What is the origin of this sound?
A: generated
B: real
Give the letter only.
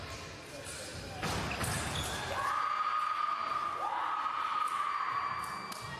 B